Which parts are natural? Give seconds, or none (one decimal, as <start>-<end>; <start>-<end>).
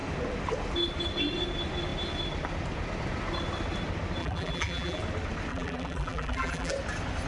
0.0-4.2; 5.0-5.5; 6.7-7.3